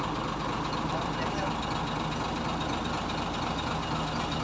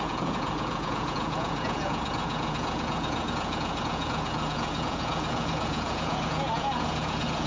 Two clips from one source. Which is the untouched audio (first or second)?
first